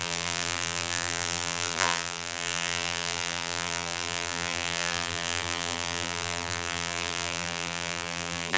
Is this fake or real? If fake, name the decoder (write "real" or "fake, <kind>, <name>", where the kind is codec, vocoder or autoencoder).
fake, vocoder, BigVGAN v2